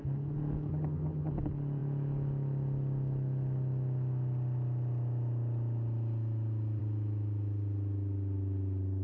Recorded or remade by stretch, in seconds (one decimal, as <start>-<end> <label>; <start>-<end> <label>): 0.0-0.7 recorded; 0.7-1.3 remade; 1.3-9.0 recorded